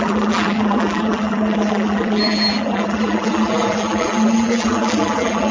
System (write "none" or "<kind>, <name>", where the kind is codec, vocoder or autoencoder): vocoder, BigVGAN v2